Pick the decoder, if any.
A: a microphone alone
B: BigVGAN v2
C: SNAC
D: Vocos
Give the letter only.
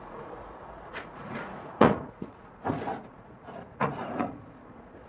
D